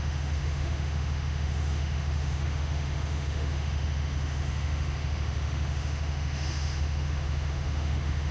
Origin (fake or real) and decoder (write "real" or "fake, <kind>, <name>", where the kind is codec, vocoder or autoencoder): fake, autoencoder, DAC-VAE